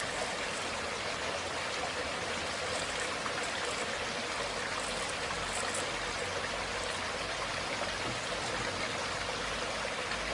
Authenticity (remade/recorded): recorded